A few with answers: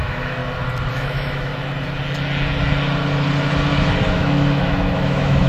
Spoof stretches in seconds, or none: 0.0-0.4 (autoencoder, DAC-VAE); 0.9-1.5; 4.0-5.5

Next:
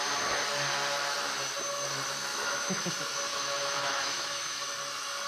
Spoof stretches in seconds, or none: 2.3-2.9 (autoencoder, DAC-VAE); 3.3-4.6